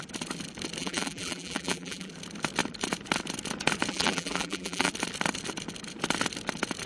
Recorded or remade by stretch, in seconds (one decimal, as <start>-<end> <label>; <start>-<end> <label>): 0.0-0.8 recorded; 0.8-2.1 remade; 2.1-3.9 recorded; 3.9-4.9 remade; 4.9-6.9 recorded